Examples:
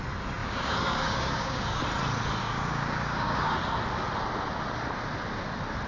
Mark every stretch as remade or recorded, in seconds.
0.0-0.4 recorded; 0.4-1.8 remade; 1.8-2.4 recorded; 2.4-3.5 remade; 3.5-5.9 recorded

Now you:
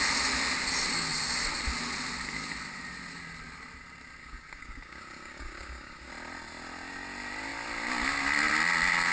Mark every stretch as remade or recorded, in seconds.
0.0-4.2 recorded; 4.2-6.1 remade; 6.1-9.1 recorded